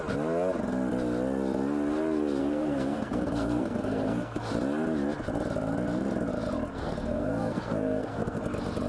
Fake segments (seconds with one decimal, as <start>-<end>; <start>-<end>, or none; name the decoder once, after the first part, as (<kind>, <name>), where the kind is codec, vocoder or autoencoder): 2.4-4.4 (codec, SNAC); 6.7-8.4